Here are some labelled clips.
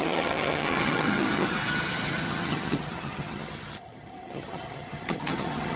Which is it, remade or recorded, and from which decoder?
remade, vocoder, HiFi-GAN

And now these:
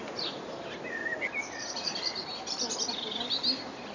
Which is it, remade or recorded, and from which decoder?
recorded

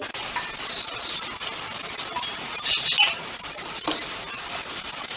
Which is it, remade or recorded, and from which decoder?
recorded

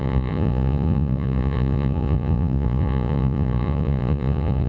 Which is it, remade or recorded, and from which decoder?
remade, vocoder, Vocos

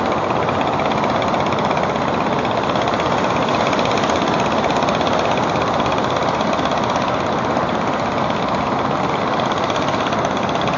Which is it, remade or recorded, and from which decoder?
recorded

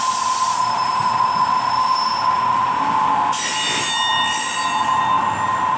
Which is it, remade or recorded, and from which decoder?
recorded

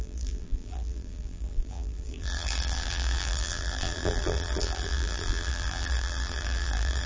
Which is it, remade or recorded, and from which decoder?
remade, vocoder, BigVGAN v2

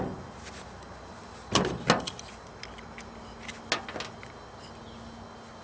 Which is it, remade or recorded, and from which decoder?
recorded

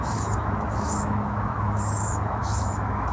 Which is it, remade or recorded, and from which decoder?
remade, autoencoder, DAC-VAE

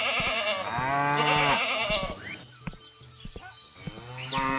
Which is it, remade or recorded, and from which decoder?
recorded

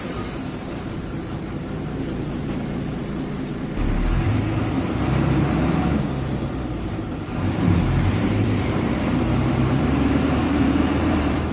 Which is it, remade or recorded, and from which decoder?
remade, vocoder, BigVGAN v2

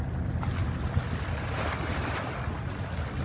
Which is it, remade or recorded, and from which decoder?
recorded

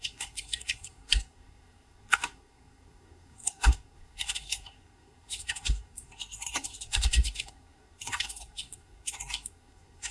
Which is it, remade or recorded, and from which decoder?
remade, codec, SNAC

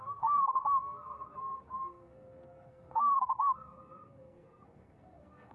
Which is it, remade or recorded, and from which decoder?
remade, codec, SNAC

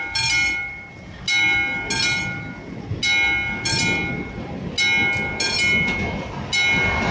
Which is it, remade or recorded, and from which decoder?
recorded